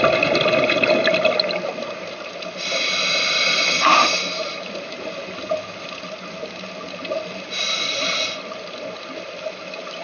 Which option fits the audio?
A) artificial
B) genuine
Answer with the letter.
B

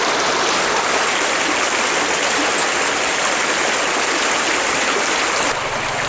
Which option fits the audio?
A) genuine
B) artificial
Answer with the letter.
A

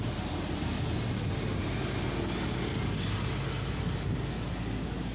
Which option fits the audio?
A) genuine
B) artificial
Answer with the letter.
A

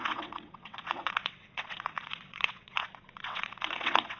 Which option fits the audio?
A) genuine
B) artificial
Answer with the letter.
B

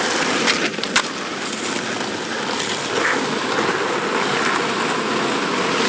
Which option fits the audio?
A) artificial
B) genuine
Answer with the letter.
B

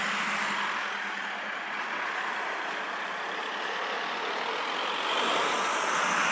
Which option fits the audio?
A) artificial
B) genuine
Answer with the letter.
B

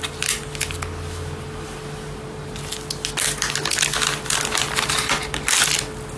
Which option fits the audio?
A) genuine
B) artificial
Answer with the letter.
A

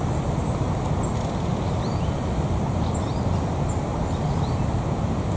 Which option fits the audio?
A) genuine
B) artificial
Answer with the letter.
A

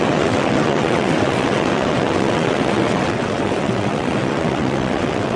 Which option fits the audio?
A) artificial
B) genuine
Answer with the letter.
A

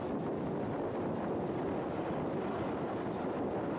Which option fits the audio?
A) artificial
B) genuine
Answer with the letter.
B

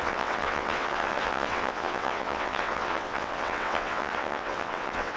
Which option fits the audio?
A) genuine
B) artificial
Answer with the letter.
B